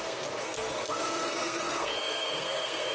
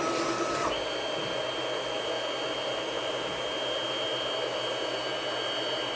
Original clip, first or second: second